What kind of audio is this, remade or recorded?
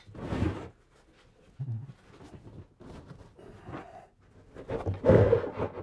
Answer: recorded